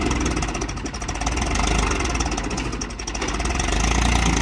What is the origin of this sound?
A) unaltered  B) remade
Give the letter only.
A